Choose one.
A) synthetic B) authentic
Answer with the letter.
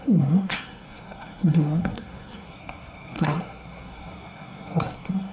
A